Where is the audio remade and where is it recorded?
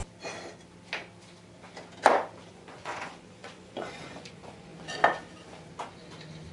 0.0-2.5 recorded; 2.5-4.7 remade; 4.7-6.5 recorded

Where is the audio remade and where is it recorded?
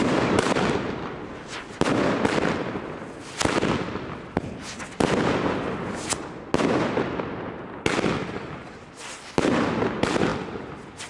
0.0-11.1 recorded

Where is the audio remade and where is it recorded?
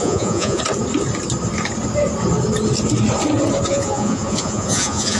0.0-0.6 remade; 0.6-3.7 recorded; 3.7-5.2 remade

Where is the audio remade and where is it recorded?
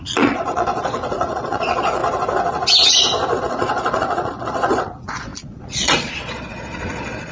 0.0-2.0 remade; 2.0-3.4 recorded; 3.4-7.3 remade